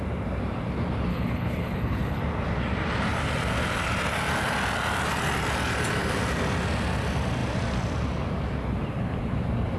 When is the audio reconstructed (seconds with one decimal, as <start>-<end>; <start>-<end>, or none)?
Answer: 1.1-2.2